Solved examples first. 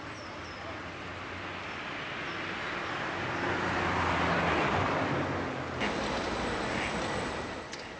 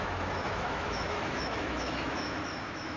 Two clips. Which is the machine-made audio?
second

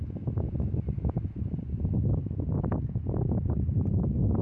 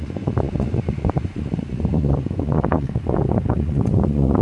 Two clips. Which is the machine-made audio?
second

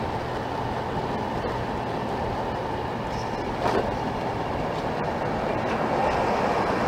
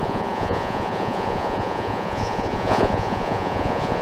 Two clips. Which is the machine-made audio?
second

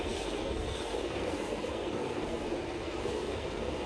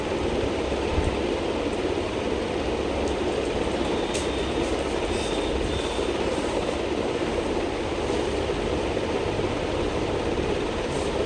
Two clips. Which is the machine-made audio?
first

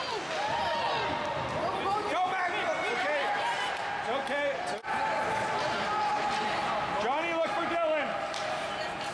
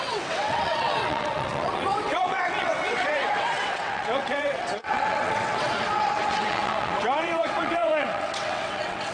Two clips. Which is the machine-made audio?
second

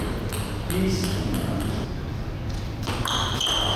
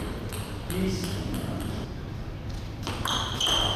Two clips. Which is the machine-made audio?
second